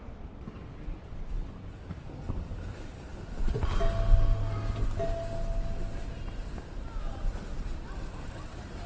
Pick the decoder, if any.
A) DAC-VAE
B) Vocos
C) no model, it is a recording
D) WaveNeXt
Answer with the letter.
C